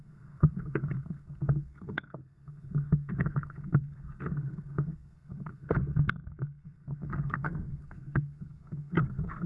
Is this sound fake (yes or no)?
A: yes